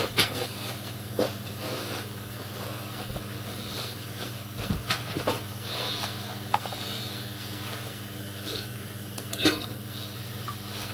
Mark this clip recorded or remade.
remade